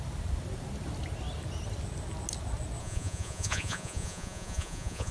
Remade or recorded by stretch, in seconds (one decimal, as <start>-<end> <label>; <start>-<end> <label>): 0.0-2.8 recorded; 2.8-5.1 remade